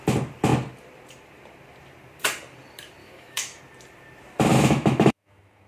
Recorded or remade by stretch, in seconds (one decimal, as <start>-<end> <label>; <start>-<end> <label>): 0.0-3.0 recorded; 3.0-3.6 remade; 3.6-4.5 recorded; 4.5-5.7 remade